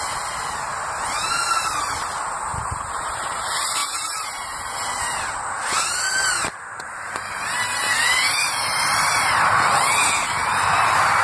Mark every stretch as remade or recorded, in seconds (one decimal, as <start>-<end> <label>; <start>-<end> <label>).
0.0-11.2 recorded